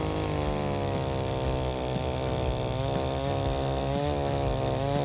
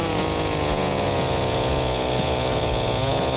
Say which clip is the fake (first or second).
second